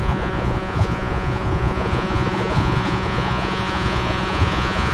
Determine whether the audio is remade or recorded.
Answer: remade